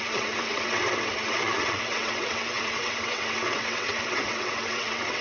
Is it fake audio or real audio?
fake